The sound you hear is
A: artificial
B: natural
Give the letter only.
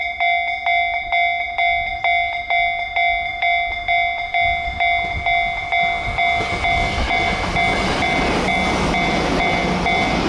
B